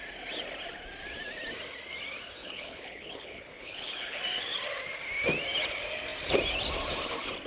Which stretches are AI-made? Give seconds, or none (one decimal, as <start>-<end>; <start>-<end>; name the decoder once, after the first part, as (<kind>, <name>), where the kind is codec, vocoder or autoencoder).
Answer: 2.4-4.2 (codec, HILCodec)